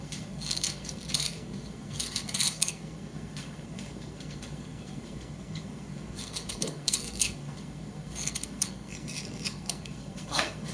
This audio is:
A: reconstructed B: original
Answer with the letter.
A